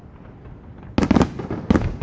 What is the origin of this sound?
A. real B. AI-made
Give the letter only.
A